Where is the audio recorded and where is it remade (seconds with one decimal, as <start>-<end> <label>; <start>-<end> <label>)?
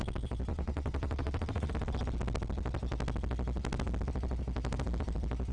0.0-0.5 recorded; 0.5-1.7 remade; 1.7-5.5 recorded